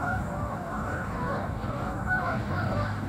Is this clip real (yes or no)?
no